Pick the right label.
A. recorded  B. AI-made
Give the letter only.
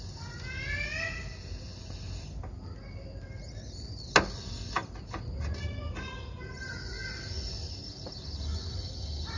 A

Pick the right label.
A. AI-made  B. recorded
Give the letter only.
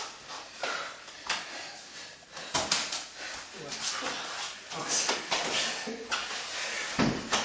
B